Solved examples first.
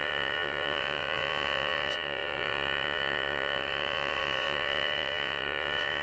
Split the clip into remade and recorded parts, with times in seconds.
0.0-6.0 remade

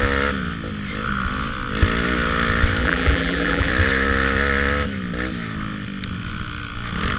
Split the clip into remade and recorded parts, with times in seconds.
0.0-2.8 recorded; 2.8-3.7 remade; 3.7-7.2 recorded

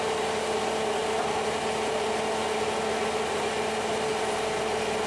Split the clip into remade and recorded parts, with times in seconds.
0.0-5.1 recorded

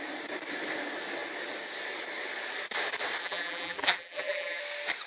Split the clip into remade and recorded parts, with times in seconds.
0.0-3.2 recorded; 3.2-4.6 remade; 4.6-5.1 recorded

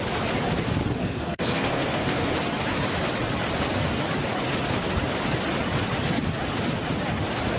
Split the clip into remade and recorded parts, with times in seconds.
0.0-1.0 recorded; 1.0-2.3 remade; 2.3-7.6 recorded

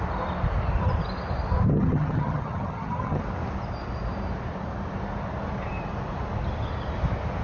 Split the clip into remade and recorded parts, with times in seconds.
0.0-1.7 recorded; 1.7-3.2 remade; 3.2-7.4 recorded